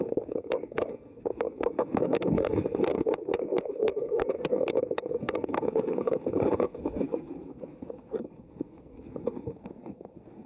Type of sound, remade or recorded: remade